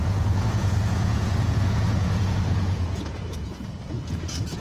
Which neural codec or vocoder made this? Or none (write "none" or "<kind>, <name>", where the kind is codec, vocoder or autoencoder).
vocoder, Vocos